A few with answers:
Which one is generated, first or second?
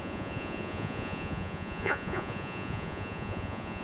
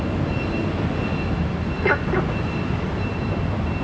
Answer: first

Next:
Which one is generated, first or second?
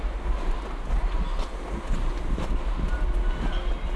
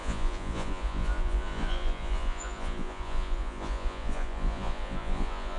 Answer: second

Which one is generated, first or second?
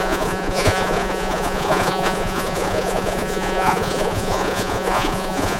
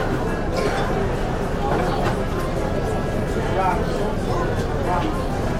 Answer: first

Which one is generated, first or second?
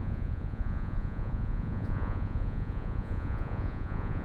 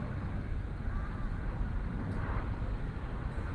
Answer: first